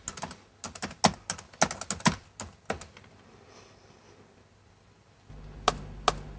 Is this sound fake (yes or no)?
no